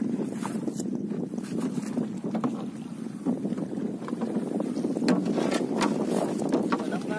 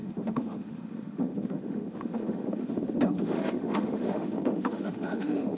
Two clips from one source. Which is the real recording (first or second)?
first